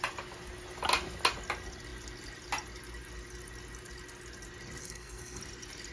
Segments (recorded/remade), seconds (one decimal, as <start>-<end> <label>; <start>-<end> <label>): 0.0-4.8 recorded; 4.8-5.4 remade; 5.4-5.9 recorded